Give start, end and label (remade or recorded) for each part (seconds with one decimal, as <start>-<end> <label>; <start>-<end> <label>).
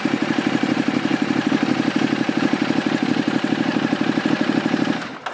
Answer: 0.0-5.3 recorded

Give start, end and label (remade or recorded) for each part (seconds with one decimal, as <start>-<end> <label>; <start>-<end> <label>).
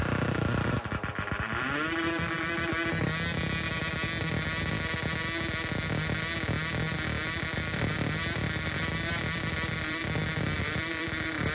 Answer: 0.0-2.7 remade; 2.7-7.3 recorded; 7.3-10.0 remade; 10.0-10.6 recorded; 10.6-11.5 remade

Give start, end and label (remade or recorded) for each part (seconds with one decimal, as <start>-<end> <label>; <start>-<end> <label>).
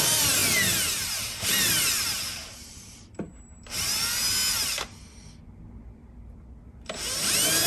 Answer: 0.0-2.4 recorded; 2.4-3.3 remade; 3.3-7.7 recorded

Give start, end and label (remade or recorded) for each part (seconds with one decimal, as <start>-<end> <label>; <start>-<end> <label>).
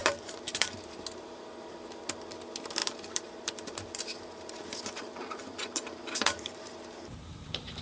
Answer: 0.0-1.4 remade; 1.4-2.8 recorded; 2.8-7.8 remade